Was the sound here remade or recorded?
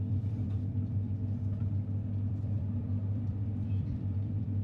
remade